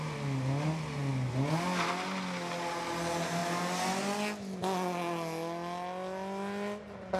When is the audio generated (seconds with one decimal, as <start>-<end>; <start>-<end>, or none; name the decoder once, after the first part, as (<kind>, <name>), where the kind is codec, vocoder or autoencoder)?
none

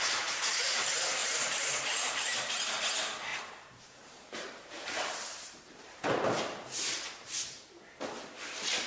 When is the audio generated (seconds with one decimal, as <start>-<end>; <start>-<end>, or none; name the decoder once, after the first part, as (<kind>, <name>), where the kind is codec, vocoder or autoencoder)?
1.2-2.5 (vocoder, BigVGAN v2); 3.3-7.4

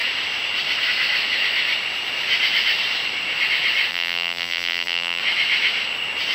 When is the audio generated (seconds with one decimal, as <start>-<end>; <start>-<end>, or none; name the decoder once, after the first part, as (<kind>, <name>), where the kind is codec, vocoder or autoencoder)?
3.9-5.2 (vocoder, BigVGAN v2)

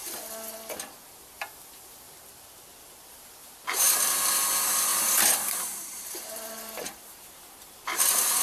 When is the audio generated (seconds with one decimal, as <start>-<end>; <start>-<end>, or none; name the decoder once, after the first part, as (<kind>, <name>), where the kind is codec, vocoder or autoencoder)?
3.4-4.0 (vocoder, BigVGAN v2); 4.9-8.0

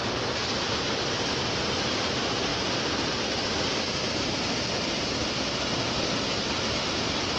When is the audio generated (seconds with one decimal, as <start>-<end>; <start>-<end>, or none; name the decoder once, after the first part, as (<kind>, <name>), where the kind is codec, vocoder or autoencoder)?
0.7-2.5 (vocoder, BigVGAN v2); 6.0-7.4

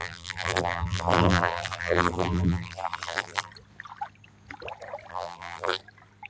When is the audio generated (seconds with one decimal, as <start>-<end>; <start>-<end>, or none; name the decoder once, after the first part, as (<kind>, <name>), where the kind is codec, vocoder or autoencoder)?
0.0-3.5 (vocoder, BigVGAN v2); 5.1-5.8

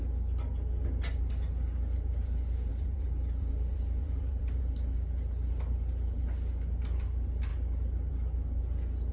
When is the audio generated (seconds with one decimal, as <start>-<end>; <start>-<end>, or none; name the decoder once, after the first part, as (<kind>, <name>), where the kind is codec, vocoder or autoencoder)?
2.7-4.6 (vocoder, BigVGAN v2)